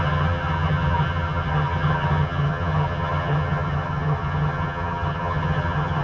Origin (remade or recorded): remade